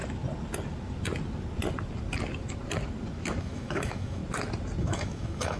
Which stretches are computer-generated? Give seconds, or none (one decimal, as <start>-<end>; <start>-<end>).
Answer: 3.4-4.2; 4.8-5.6